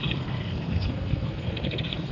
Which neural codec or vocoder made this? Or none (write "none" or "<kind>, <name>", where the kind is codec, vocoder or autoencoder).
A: codec, SNAC